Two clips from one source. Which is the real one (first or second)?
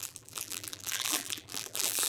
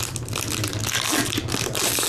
second